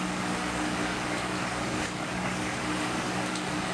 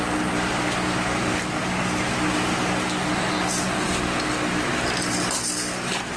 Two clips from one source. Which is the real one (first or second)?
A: second